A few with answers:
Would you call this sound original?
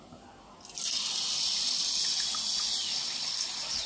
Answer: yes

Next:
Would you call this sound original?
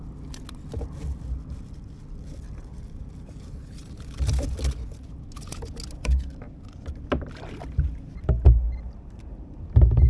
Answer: yes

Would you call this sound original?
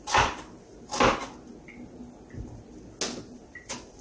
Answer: yes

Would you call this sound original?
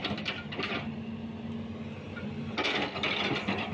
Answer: yes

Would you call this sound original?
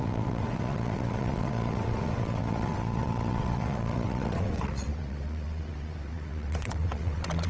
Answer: no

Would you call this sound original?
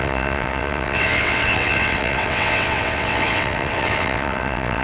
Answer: no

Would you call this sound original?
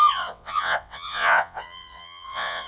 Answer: no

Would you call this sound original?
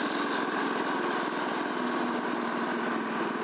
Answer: yes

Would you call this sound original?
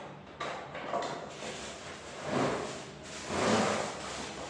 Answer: yes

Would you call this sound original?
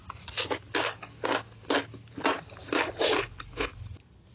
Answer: yes